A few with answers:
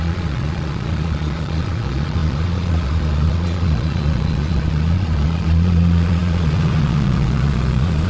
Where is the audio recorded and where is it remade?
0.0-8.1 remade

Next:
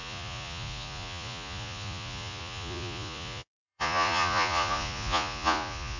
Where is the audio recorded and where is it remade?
0.0-6.0 remade